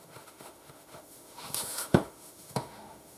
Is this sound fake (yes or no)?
yes